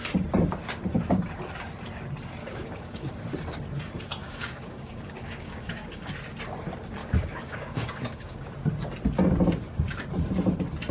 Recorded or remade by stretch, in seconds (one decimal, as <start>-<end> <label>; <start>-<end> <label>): 0.0-2.4 recorded; 2.4-3.1 remade; 3.1-4.2 recorded; 4.2-6.1 remade; 6.1-7.0 recorded; 7.0-8.5 remade; 8.5-10.9 recorded